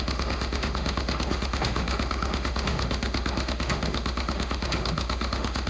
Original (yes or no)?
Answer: no